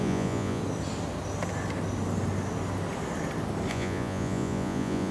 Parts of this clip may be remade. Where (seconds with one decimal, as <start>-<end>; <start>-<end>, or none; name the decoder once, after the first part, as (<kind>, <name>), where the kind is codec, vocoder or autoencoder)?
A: 0.0-0.6 (vocoder, Vocos); 3.7-5.1